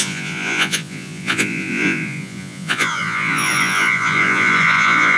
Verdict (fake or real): fake